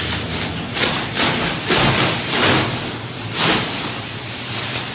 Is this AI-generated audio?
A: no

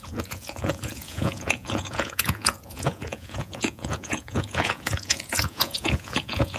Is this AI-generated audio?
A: yes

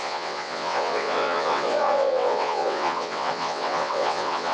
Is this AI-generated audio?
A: yes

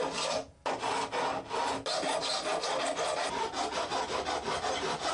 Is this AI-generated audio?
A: no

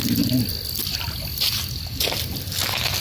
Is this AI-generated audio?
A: no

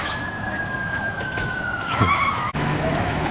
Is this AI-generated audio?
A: yes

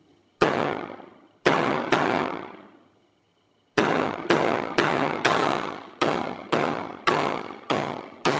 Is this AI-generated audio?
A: yes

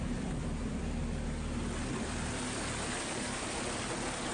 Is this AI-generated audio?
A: no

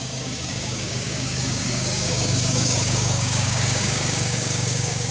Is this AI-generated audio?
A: yes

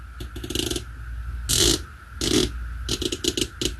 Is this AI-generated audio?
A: no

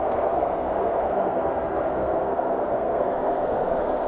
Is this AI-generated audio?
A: yes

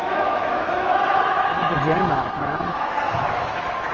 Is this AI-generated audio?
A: yes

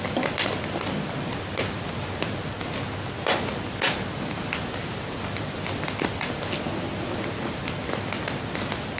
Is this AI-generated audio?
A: no